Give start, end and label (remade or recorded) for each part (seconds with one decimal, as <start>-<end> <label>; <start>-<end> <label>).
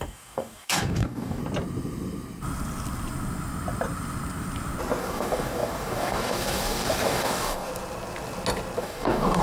0.0-1.4 remade; 1.4-5.0 recorded; 5.0-7.7 remade; 7.7-8.8 recorded; 8.8-9.4 remade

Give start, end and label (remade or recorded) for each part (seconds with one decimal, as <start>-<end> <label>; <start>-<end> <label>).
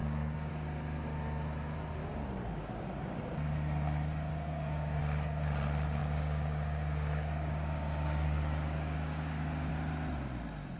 0.0-0.5 remade; 0.5-2.0 recorded; 2.0-3.3 remade; 3.3-4.3 recorded; 4.3-5.0 remade; 5.0-6.0 recorded; 6.0-9.7 remade; 9.7-10.8 recorded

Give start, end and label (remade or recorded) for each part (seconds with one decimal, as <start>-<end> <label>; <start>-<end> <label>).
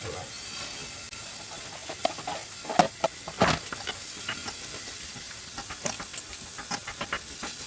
0.0-7.7 recorded